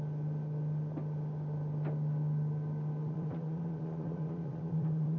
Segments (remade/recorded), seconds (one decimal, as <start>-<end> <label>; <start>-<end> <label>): 0.0-3.0 recorded; 3.0-5.2 remade